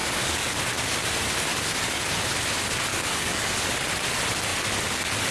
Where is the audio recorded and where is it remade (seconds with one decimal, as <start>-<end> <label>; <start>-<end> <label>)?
0.0-0.6 remade; 0.6-1.5 recorded; 1.5-2.0 remade; 2.0-2.9 recorded; 2.9-3.5 remade; 3.5-5.3 recorded